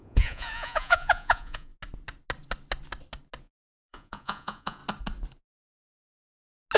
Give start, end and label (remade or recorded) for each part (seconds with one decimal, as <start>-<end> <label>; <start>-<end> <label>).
0.0-1.7 remade; 1.7-3.4 recorded; 3.4-4.8 remade; 4.8-6.8 recorded